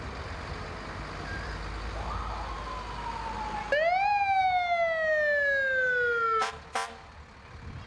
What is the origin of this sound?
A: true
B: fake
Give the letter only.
A